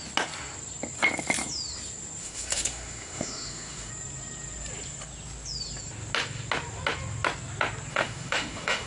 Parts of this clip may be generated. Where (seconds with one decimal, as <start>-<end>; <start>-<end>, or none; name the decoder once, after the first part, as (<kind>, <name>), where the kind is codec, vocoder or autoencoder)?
2.2-3.9 (autoencoder, DAC-VAE); 7.9-8.9